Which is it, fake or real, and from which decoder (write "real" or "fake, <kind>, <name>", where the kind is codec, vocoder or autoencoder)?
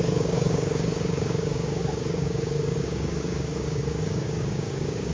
fake, codec, DAC